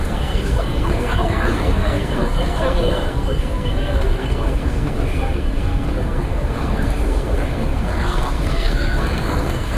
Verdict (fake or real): fake